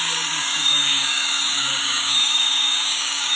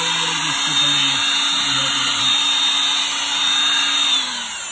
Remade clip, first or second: first